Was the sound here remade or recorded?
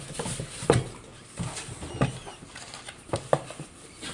recorded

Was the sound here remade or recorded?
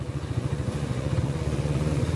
remade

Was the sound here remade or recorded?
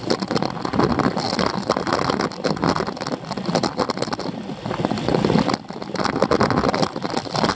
recorded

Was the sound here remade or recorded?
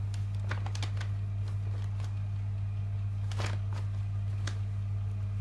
recorded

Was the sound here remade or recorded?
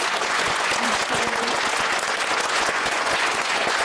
remade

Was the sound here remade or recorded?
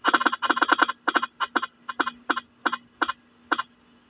recorded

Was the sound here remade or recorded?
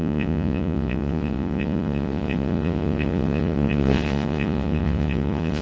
remade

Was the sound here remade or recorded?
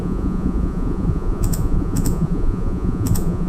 remade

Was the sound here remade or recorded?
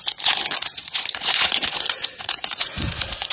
remade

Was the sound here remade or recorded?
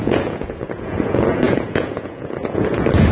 remade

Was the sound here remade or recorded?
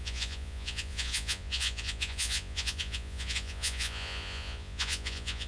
remade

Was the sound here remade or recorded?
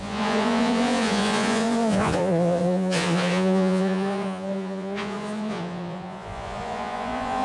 remade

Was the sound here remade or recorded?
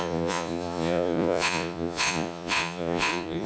remade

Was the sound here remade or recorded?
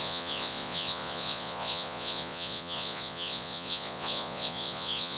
remade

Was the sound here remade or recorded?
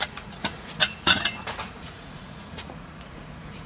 remade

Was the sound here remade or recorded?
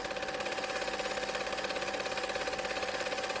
recorded